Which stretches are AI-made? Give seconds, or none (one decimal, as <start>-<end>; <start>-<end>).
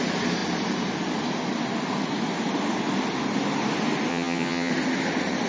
4.1-4.7